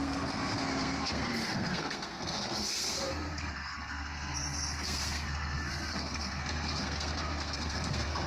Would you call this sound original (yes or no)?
no